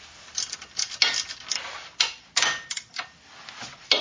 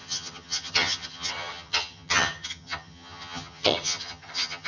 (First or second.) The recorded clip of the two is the first